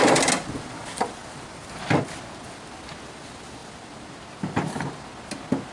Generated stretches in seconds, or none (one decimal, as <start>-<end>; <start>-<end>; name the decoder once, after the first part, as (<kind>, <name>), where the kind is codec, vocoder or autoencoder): none